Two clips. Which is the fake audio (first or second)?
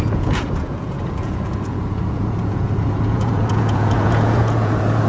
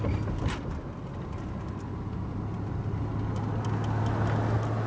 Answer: first